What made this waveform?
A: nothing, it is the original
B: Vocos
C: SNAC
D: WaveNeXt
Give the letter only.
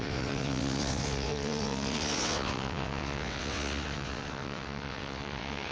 D